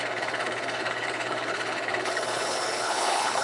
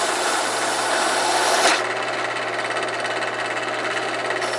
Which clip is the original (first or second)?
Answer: second